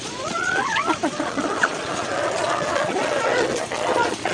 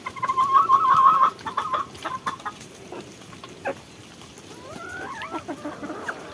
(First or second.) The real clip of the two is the second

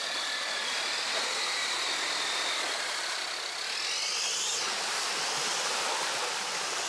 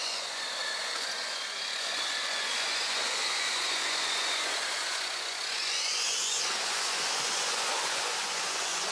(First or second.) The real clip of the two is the first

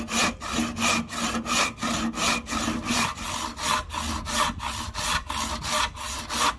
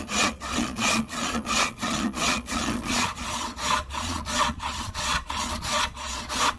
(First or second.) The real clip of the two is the first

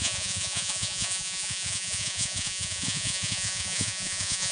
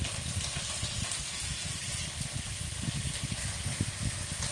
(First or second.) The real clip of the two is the second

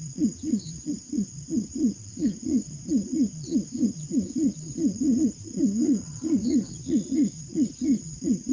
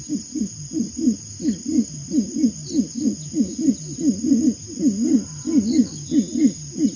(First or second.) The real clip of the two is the second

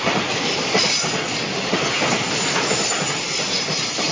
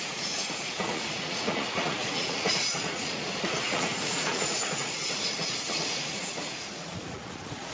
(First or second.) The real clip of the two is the first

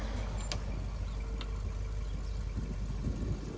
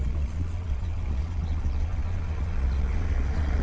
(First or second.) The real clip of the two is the first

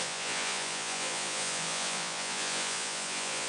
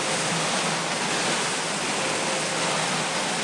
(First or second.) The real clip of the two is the second